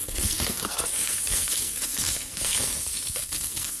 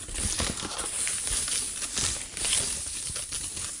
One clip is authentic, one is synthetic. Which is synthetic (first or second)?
first